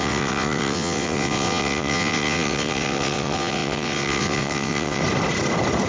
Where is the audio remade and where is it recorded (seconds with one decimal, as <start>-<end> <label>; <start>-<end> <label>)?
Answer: 0.0-5.0 remade; 5.0-5.9 recorded